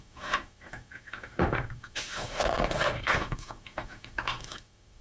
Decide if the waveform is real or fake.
fake